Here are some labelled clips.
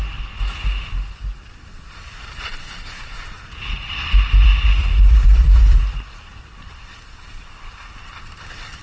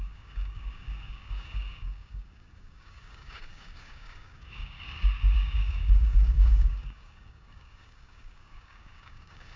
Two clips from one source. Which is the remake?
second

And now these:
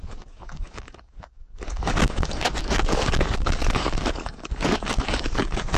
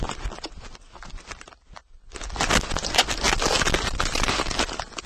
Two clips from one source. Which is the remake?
first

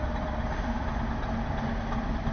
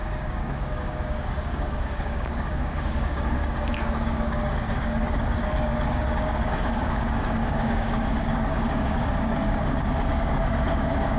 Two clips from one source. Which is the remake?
second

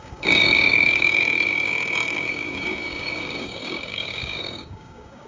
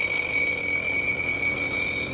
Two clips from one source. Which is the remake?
first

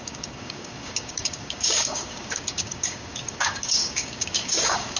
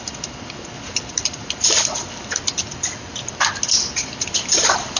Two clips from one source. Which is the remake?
first